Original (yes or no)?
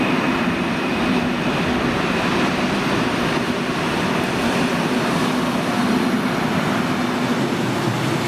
yes